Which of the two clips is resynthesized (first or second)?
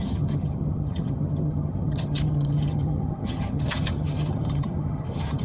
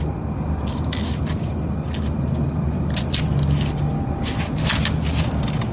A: first